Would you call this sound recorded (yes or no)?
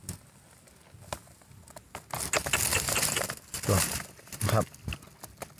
yes